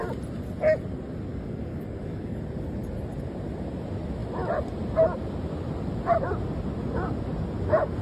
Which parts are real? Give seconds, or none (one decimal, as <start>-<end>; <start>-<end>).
0.0-1.3; 2.4-8.0